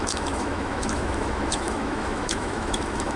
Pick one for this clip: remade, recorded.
remade